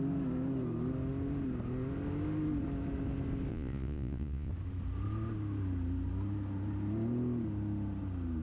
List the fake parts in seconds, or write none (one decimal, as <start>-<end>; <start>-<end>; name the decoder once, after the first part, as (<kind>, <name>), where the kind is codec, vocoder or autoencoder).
3.5-4.5 (vocoder, Vocos)